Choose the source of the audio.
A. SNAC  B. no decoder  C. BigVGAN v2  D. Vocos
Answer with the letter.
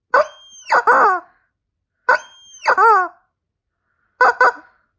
B